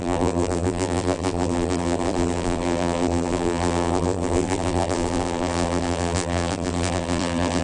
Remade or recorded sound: remade